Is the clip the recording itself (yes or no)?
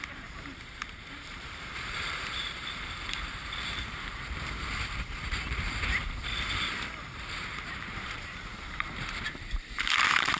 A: no